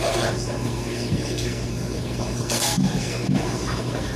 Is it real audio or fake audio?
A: fake